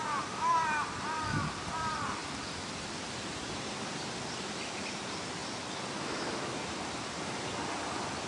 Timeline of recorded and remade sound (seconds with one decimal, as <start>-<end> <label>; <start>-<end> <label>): 0.0-8.3 remade